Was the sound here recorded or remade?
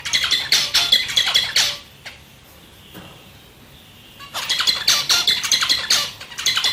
remade